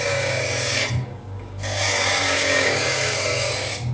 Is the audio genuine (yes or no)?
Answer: no